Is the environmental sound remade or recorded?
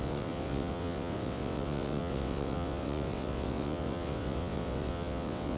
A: remade